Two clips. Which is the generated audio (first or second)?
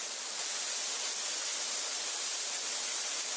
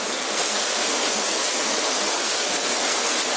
second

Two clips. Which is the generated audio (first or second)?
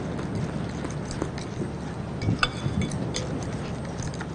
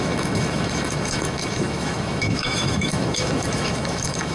second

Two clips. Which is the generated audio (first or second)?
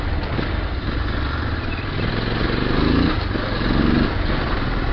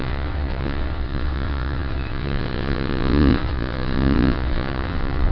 second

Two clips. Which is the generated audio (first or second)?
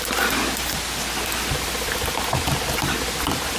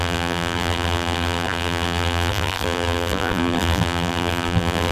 second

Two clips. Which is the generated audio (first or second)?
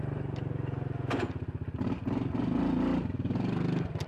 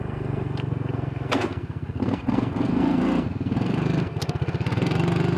second